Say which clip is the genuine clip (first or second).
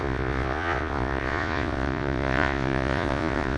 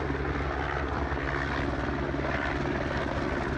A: second